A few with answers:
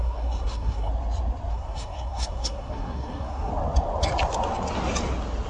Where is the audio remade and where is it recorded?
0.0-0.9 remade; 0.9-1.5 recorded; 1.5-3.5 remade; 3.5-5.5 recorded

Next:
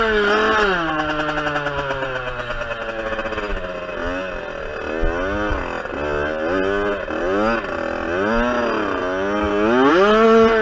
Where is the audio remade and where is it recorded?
0.0-10.6 recorded

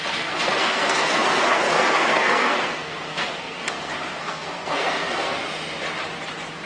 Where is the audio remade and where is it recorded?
0.0-5.4 remade; 5.4-6.7 recorded

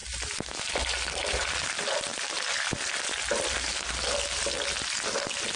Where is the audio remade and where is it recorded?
0.0-5.6 recorded

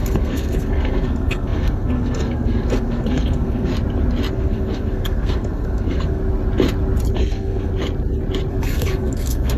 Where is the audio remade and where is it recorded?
0.0-3.7 remade; 3.7-4.3 recorded; 4.3-6.2 remade; 6.2-7.1 recorded; 7.1-7.7 remade; 7.7-8.5 recorded; 8.5-9.6 remade

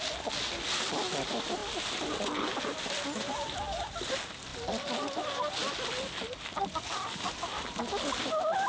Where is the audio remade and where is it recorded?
0.0-8.7 recorded

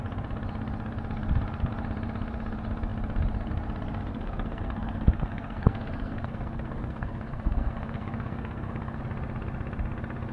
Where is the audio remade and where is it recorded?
0.0-4.1 recorded; 4.1-9.0 remade; 9.0-10.3 recorded